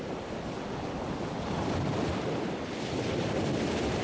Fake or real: real